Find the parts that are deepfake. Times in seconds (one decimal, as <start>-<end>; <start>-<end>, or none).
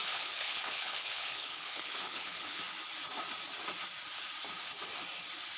0.0-2.6